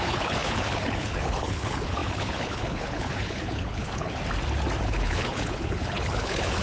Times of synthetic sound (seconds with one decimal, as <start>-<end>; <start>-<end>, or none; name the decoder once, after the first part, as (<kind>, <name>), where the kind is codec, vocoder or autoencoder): 0.0-4.2 (codec, HILCodec); 4.8-6.6